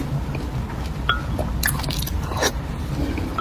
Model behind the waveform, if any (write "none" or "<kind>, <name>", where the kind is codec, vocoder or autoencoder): none